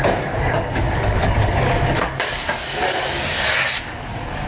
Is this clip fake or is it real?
fake